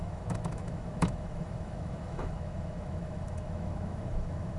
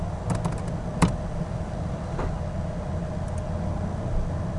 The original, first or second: second